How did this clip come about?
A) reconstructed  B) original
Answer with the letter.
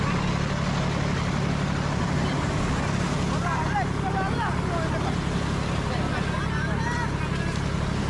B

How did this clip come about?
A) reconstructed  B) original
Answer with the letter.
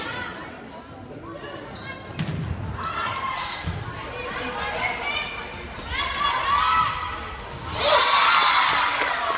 B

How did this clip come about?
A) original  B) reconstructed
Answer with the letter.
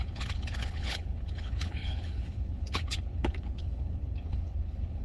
B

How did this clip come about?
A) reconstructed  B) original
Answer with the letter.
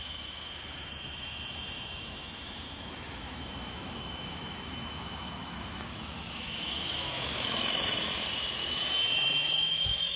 A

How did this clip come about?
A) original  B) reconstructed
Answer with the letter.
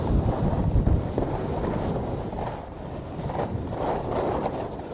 A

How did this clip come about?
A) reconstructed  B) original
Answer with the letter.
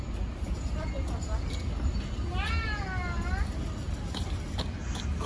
B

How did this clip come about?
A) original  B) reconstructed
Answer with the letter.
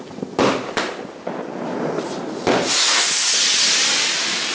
A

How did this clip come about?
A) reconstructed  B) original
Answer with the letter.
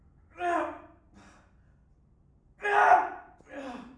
B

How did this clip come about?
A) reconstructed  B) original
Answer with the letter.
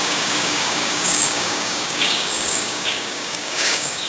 A